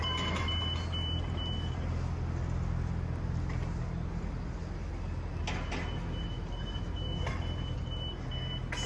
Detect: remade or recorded recorded